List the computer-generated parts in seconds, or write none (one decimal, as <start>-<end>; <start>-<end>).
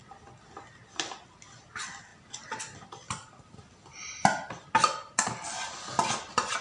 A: none